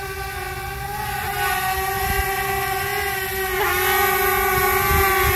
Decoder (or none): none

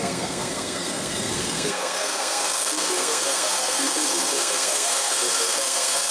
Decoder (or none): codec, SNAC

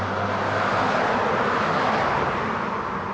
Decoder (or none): none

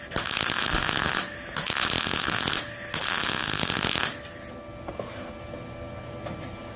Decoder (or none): none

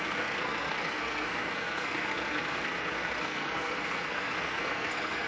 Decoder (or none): codec, SNAC